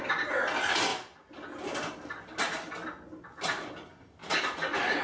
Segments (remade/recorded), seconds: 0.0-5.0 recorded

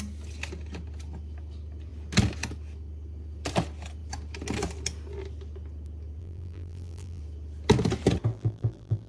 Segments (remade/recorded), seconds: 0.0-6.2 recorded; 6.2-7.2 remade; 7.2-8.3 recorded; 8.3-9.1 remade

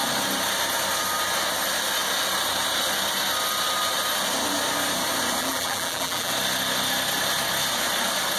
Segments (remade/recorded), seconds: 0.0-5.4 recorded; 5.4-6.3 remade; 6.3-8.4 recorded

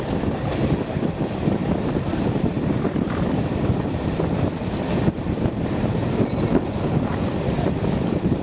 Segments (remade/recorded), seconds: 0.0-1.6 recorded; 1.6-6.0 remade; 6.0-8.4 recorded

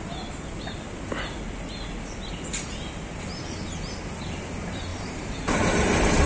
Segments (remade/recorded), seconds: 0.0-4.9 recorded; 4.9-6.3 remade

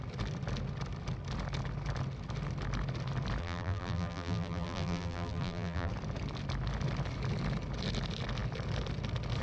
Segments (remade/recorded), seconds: 0.0-3.4 recorded; 3.4-5.9 remade; 5.9-9.4 recorded

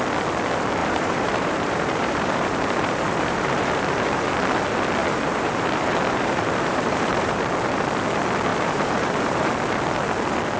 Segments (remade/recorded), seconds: 0.0-0.8 recorded; 0.8-4.3 remade; 4.3-5.0 recorded; 5.0-7.4 remade; 7.4-8.5 recorded; 8.5-9.5 remade; 9.5-10.6 recorded

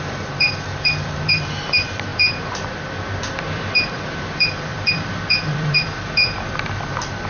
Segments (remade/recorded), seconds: 0.0-7.3 remade